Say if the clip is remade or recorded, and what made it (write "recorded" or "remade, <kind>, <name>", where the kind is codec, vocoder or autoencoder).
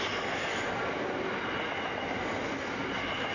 recorded